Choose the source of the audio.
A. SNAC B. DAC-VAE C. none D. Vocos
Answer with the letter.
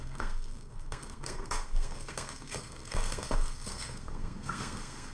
A